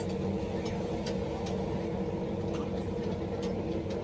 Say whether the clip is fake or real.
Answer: real